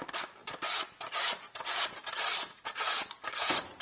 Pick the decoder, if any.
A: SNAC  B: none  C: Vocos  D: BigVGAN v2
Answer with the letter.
B